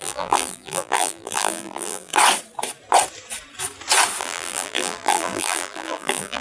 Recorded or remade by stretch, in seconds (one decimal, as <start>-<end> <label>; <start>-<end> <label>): 0.0-2.1 remade; 2.1-4.2 recorded; 4.2-6.4 remade